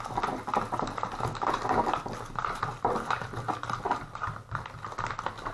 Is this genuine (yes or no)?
yes